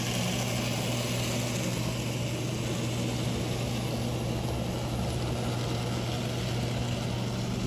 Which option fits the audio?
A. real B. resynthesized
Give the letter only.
A